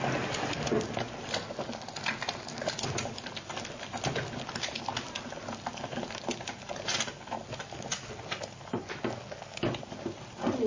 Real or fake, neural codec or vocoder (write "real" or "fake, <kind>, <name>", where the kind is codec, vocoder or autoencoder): real